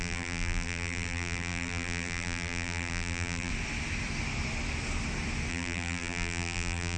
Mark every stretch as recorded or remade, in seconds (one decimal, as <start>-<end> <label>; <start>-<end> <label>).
0.0-3.5 remade; 3.5-5.5 recorded; 5.5-7.0 remade